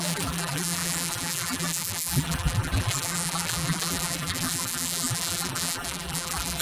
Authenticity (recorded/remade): remade